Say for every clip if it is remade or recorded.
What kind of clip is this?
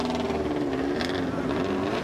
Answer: recorded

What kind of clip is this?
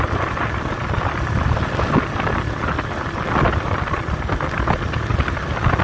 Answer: recorded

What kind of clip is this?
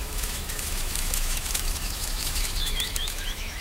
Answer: remade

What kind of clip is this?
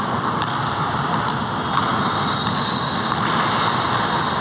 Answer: recorded